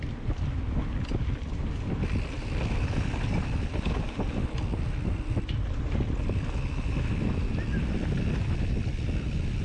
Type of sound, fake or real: real